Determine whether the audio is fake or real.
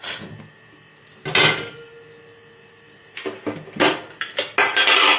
real